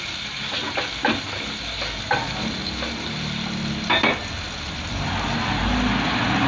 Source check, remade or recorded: recorded